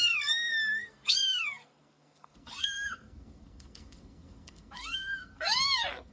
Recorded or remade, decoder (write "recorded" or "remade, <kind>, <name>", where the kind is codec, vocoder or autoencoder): remade, codec, SNAC